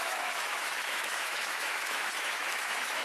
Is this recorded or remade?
remade